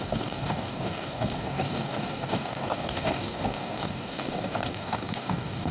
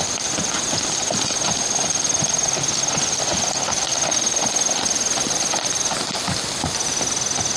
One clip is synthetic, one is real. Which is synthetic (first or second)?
first